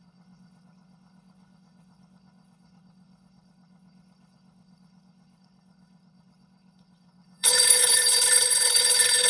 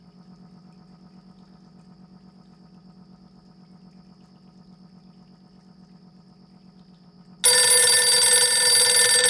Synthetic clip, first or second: first